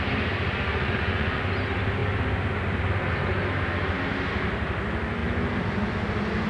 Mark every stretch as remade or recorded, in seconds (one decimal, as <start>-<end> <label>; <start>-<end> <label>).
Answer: 0.0-0.7 recorded; 0.7-1.4 remade; 1.4-6.5 recorded